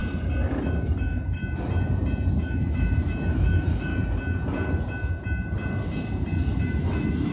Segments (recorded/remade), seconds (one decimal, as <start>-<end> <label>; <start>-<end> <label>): 0.0-0.6 recorded; 0.6-1.4 remade; 1.4-2.3 recorded; 2.3-3.9 remade; 3.9-6.6 recorded; 6.6-7.3 remade